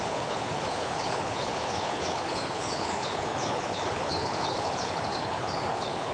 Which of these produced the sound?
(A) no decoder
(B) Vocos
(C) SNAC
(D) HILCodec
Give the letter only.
D